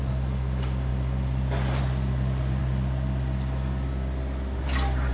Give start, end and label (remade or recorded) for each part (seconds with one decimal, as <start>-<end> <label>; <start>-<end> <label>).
0.0-5.1 recorded